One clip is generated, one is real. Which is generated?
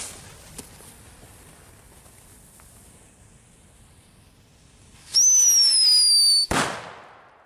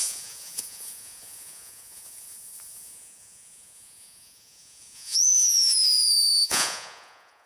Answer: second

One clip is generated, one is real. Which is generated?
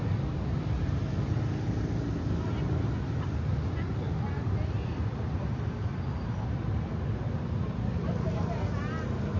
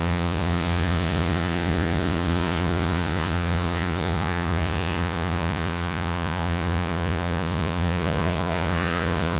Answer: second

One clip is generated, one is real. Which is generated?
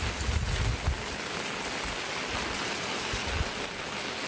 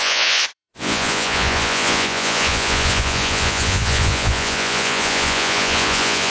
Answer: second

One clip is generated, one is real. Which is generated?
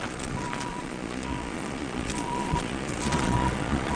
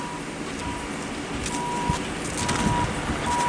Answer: first